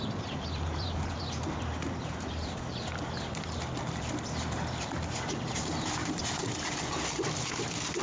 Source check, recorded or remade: remade